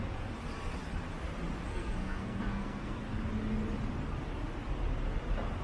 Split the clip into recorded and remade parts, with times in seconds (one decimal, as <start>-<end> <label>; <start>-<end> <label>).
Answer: 0.0-1.7 recorded; 1.7-3.0 remade; 3.0-5.6 recorded